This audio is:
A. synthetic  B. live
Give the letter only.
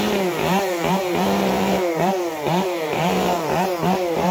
A